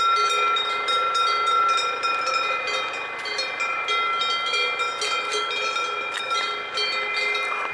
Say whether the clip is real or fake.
real